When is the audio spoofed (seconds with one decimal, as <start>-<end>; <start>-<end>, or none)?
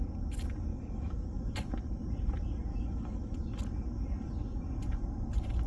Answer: 0.7-1.6; 2.7-3.3